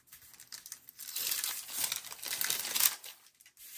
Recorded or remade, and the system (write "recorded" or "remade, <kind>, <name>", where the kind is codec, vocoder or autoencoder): recorded